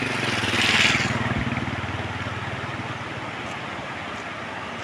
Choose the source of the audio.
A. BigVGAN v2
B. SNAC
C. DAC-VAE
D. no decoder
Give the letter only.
D